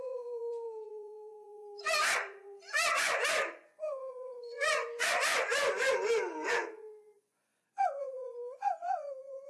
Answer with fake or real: fake